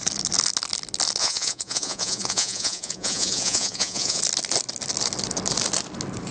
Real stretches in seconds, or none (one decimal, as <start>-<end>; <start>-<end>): 0.0-1.2; 4.2-6.3